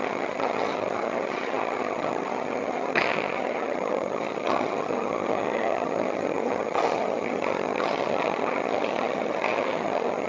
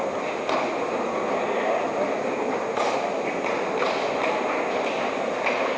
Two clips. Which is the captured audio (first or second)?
second